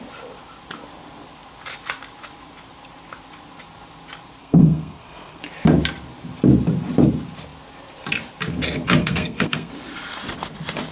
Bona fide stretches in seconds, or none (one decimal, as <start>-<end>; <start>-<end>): 0.0-4.4; 5.4-9.0; 9.7-10.9